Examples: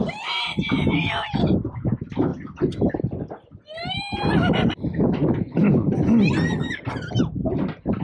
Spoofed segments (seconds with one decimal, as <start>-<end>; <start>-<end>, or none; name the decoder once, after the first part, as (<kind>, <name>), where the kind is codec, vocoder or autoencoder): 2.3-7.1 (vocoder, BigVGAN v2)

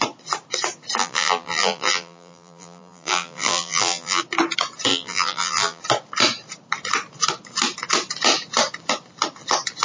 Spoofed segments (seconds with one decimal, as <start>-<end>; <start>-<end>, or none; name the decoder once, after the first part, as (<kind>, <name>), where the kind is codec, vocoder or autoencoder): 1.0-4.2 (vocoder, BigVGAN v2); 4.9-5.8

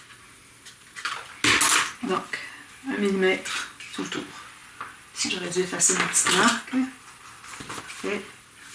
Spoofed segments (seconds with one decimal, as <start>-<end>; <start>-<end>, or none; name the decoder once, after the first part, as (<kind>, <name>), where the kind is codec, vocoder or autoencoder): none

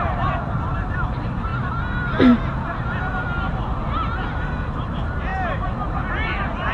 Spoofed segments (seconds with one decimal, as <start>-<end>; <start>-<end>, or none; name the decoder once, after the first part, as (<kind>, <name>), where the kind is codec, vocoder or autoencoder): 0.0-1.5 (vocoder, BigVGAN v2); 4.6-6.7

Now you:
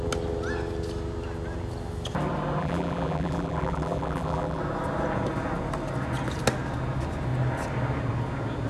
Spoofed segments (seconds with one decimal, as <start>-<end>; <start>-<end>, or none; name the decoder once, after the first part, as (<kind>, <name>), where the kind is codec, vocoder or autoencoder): 2.6-4.6 (vocoder, BigVGAN v2)

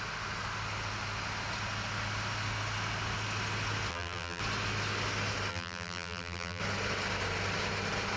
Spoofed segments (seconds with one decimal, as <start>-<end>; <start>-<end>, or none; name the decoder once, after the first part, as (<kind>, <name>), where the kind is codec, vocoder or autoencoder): 3.9-4.4 (vocoder, BigVGAN v2); 5.5-6.6

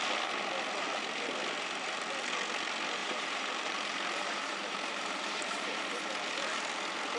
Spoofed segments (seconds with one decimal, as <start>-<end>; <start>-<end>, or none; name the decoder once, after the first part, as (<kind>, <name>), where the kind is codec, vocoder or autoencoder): 3.0-6.0 (vocoder, BigVGAN v2)

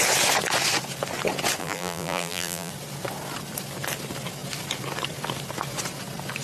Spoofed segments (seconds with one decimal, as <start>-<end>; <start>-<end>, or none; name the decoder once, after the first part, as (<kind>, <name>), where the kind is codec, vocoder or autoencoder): 1.6-2.7 (vocoder, BigVGAN v2)